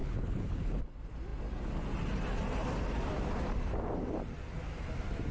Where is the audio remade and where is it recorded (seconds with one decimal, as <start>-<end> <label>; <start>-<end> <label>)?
0.0-0.8 remade; 0.8-5.3 recorded